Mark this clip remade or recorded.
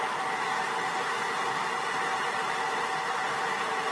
recorded